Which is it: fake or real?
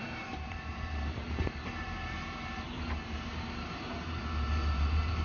fake